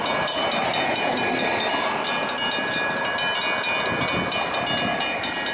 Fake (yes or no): no